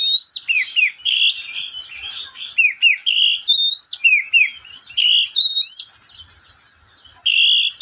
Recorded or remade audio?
recorded